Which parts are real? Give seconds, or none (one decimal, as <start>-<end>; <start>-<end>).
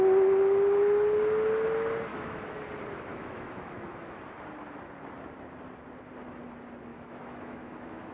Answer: 0.0-2.1; 2.6-3.1; 4.2-6.9